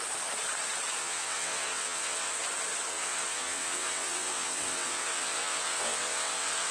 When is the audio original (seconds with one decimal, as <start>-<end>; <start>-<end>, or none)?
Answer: 0.0-1.0; 2.3-2.9